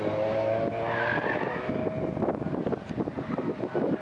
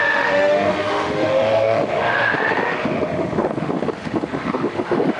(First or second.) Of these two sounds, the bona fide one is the first